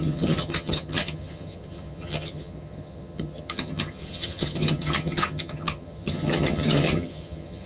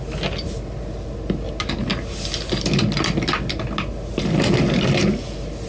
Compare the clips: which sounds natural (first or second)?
second